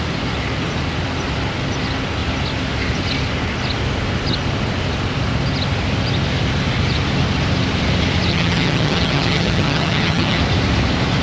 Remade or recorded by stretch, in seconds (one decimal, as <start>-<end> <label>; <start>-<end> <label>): 0.0-8.3 recorded; 8.3-10.4 remade; 10.4-11.2 recorded